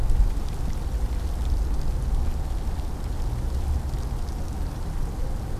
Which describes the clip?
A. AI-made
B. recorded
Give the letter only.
B